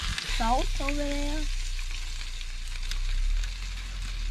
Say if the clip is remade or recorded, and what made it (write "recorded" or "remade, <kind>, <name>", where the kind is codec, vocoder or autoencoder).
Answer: recorded